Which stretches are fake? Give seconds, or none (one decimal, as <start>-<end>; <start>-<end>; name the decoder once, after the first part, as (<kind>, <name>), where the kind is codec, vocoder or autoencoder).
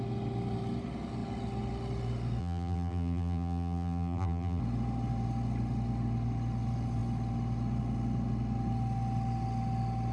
2.4-4.6 (vocoder, BigVGAN v2)